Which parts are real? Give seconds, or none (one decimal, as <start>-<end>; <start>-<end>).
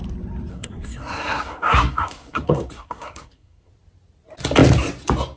0.0-0.5; 3.7-5.4